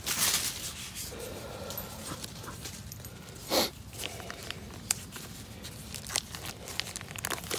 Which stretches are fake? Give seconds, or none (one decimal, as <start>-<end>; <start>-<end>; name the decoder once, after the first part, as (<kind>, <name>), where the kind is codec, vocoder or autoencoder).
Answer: none